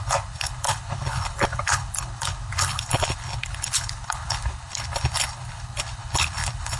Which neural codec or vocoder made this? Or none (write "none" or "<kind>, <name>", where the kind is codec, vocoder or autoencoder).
codec, HILCodec